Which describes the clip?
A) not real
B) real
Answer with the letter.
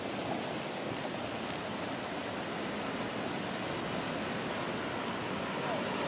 B